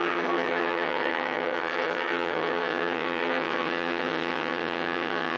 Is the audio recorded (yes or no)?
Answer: no